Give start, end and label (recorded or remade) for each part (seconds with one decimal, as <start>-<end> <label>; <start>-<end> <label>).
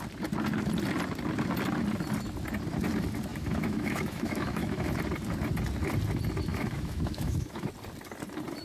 0.0-3.3 recorded; 3.3-4.9 remade; 4.9-6.5 recorded; 6.5-7.7 remade; 7.7-8.6 recorded